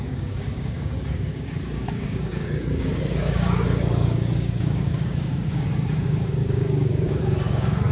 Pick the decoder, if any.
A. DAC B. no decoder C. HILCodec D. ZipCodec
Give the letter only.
A